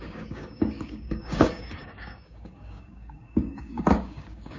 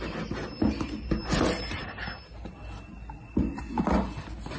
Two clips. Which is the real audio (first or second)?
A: second